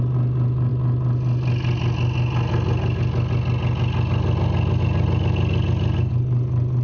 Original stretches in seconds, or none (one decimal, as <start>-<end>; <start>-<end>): 0.0-6.8